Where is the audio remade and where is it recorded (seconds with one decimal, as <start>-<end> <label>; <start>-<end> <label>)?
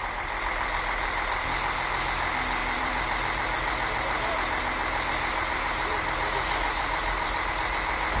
0.0-0.7 remade; 0.7-2.6 recorded; 2.6-7.5 remade; 7.5-8.2 recorded